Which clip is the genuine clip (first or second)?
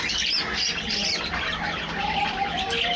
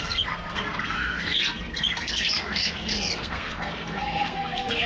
first